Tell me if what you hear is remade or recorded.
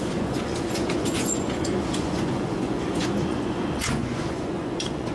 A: remade